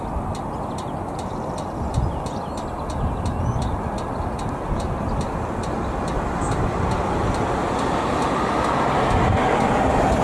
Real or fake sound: real